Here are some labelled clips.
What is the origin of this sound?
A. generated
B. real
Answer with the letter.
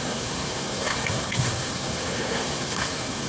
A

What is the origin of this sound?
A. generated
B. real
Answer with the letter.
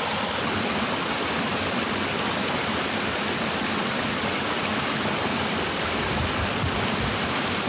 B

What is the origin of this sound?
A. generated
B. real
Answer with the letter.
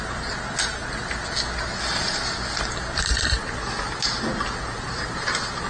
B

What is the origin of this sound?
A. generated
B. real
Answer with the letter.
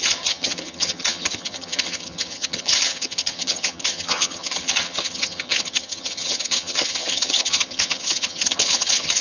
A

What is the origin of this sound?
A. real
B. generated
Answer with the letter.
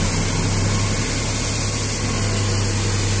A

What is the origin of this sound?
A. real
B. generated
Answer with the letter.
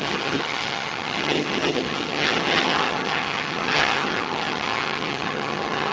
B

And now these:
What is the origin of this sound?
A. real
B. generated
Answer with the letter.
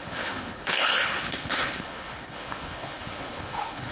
B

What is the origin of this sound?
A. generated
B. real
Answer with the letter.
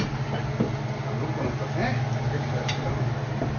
B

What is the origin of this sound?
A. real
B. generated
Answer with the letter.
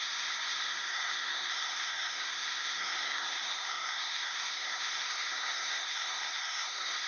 B